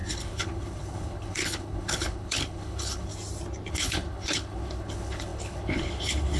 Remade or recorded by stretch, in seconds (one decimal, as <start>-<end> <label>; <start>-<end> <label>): 0.0-3.1 remade; 3.1-3.7 recorded; 3.7-6.4 remade